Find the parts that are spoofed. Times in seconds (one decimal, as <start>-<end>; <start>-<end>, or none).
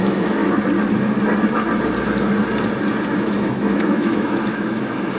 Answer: 0.0-0.4; 3.2-5.2